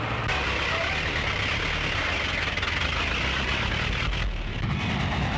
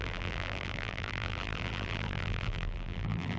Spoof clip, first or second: second